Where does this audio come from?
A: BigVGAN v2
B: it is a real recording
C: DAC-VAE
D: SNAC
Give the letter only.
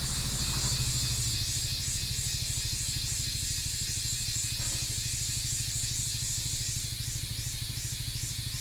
B